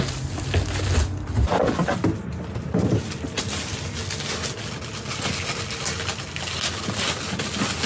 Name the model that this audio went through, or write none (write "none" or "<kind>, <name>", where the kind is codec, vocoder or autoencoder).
none